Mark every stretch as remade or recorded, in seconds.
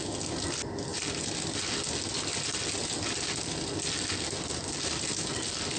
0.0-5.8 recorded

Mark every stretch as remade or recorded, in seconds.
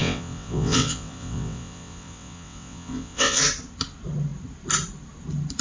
0.0-3.4 remade; 3.4-5.6 recorded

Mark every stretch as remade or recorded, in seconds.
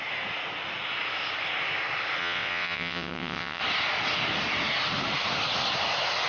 0.0-2.2 recorded; 2.2-3.6 remade; 3.6-6.3 recorded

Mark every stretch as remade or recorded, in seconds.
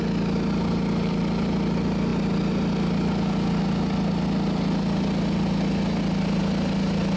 0.0-7.2 recorded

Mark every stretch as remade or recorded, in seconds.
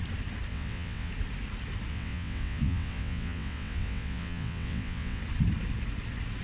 0.0-0.5 recorded; 0.5-1.1 remade; 1.1-1.9 recorded; 1.9-5.2 remade; 5.2-6.4 recorded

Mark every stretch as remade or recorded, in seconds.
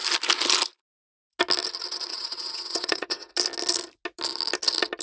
0.0-2.1 recorded; 2.1-3.3 remade; 3.3-5.0 recorded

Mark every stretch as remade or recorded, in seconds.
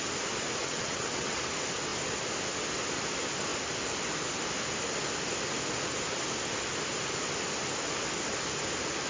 0.0-0.6 recorded; 0.6-1.4 remade; 1.4-9.1 recorded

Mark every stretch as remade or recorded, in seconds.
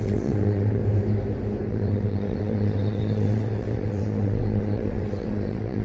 0.0-0.8 remade; 0.8-1.7 recorded; 1.7-5.8 remade